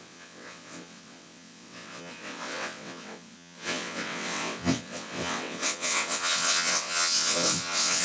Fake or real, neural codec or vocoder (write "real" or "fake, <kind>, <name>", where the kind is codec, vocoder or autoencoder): fake, vocoder, WaveNeXt